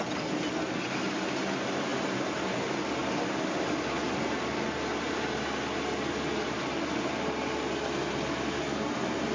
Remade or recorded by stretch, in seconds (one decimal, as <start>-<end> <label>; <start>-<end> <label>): 0.0-9.3 recorded